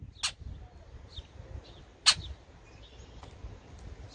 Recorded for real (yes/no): yes